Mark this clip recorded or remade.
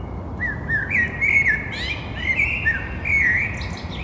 recorded